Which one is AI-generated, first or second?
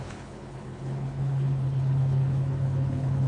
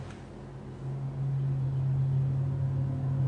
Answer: first